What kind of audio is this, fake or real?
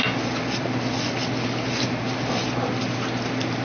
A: real